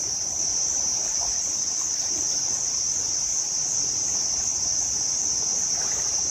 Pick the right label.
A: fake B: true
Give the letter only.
B